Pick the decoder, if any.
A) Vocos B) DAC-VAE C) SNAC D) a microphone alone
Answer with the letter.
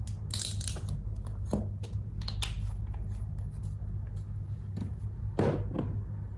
D